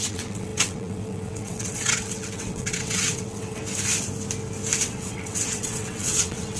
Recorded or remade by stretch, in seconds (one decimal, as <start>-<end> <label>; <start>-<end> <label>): 0.0-3.6 remade; 3.6-4.8 recorded; 4.8-6.6 remade